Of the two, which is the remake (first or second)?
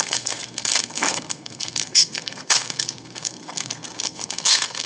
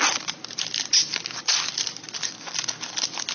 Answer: first